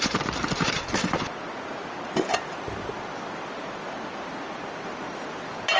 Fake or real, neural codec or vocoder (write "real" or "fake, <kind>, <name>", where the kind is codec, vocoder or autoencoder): real